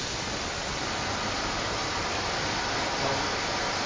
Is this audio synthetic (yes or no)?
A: no